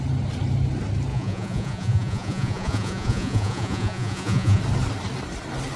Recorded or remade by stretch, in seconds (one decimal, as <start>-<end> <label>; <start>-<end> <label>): 0.0-1.1 recorded; 1.1-4.6 remade; 4.6-5.8 recorded